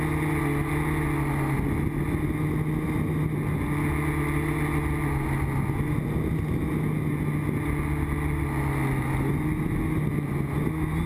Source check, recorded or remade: recorded